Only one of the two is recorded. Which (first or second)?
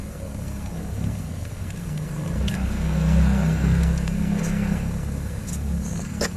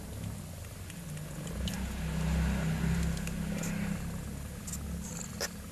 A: second